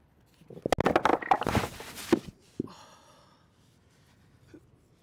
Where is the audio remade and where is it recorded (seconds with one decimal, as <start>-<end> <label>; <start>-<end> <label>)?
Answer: 0.0-5.0 recorded